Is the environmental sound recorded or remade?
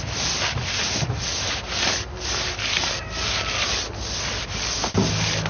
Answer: remade